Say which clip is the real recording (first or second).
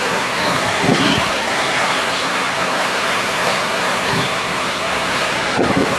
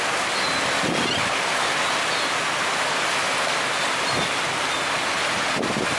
second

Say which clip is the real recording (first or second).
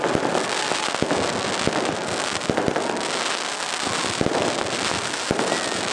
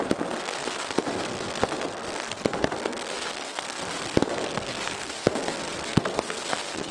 first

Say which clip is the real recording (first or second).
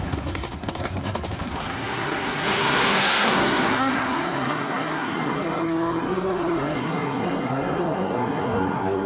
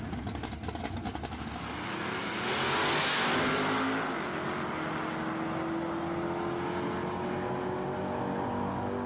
second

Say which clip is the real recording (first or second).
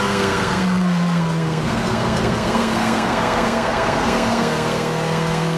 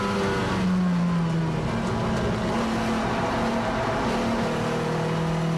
second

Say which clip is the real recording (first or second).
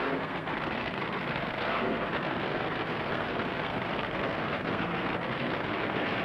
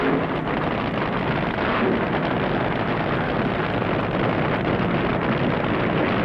second